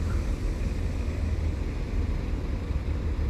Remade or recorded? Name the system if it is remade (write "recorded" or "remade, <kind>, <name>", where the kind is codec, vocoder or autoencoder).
remade, vocoder, BigVGAN v2